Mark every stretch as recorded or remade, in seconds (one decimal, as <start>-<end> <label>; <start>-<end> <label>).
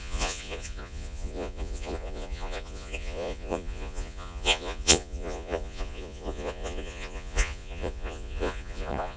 0.0-9.2 remade